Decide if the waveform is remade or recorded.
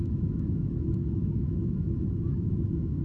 remade